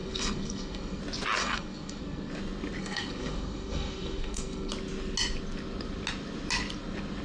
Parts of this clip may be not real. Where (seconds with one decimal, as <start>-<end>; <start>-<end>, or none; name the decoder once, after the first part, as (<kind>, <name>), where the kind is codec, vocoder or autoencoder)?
0.0-1.0 (codec, SNAC); 1.4-2.3; 2.8-4.7